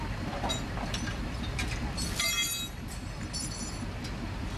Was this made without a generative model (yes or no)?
yes